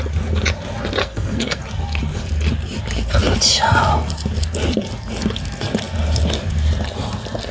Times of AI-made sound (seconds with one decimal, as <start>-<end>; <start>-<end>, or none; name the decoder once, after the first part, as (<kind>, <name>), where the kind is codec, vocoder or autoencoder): 1.0-1.6 (codec, SNAC)